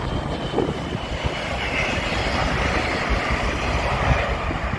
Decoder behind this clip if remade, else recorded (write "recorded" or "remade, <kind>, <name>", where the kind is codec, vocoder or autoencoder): recorded